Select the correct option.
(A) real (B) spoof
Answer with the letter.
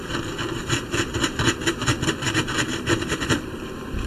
B